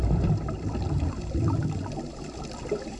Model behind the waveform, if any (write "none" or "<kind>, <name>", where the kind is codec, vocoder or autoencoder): none